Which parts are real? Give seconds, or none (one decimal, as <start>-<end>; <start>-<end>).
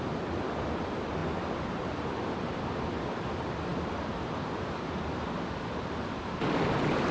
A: 0.0-7.1